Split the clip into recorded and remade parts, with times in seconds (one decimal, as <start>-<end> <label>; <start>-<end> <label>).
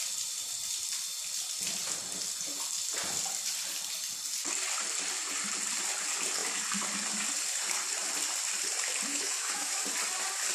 0.0-9.1 recorded; 9.1-9.8 remade; 9.8-10.5 recorded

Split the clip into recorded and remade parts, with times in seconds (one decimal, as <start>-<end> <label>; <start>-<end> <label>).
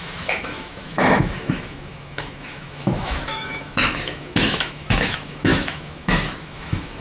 0.0-7.0 remade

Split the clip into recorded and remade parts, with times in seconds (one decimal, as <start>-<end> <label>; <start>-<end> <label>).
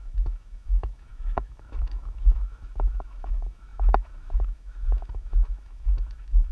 0.0-6.5 remade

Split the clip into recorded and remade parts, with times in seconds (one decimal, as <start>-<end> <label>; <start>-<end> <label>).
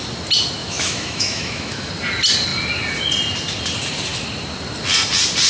0.0-0.6 recorded; 0.6-1.9 remade; 1.9-5.5 recorded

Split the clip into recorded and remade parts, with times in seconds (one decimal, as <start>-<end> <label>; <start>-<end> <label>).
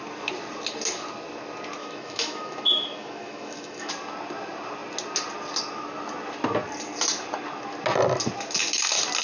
0.0-1.8 recorded; 1.8-3.9 remade; 3.9-9.2 recorded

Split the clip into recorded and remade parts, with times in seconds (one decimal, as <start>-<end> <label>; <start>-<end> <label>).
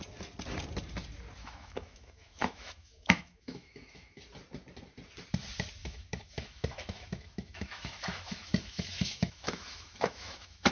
0.0-1.4 recorded; 1.4-4.2 remade; 4.2-5.8 recorded; 5.8-10.7 remade